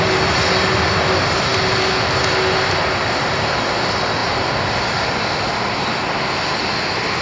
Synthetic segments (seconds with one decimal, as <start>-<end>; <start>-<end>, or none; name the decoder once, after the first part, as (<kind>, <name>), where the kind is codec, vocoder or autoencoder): none

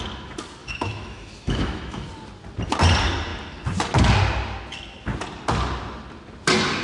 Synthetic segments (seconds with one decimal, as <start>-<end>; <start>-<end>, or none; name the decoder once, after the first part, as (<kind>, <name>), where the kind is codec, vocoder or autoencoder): 0.6-2.1 (autoencoder, DAC-VAE)

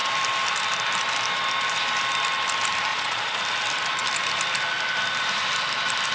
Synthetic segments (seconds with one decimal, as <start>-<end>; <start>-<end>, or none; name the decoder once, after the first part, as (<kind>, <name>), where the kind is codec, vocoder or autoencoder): 2.9-3.4 (vocoder, Vocos)

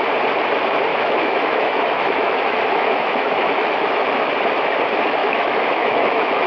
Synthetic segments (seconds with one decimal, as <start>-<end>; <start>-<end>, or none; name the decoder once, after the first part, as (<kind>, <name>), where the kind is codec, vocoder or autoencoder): 0.9-4.3 (autoencoder, DAC-VAE); 5.2-6.5

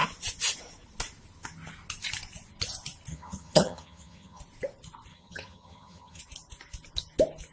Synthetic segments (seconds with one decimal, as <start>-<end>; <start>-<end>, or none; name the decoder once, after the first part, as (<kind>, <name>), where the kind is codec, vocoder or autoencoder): 3.1-4.4 (vocoder, HiFi-GAN); 5.1-6.2

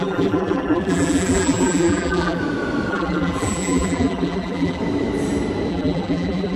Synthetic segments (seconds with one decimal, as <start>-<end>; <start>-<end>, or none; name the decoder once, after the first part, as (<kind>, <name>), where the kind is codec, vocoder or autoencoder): 0.0-2.4 (vocoder, BigVGAN v2); 2.9-4.8; 5.7-6.6

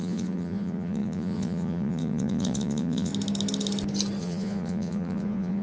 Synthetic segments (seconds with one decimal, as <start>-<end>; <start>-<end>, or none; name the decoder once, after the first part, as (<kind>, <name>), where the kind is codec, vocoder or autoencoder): 0.0-3.1 (vocoder, Vocos); 4.2-5.6